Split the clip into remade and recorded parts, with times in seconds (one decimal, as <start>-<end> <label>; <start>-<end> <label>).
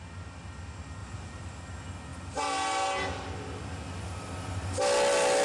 0.0-1.0 recorded; 1.0-1.6 remade; 1.6-5.4 recorded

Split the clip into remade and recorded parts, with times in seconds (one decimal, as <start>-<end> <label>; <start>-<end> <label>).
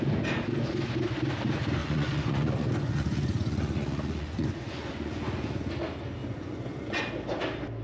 0.0-1.8 recorded; 1.8-5.7 remade; 5.7-6.2 recorded; 6.2-7.0 remade; 7.0-7.8 recorded